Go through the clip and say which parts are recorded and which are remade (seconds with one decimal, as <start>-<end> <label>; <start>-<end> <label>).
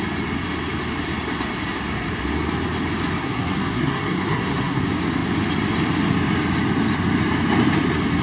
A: 0.0-3.2 recorded; 3.2-4.8 remade; 4.8-8.2 recorded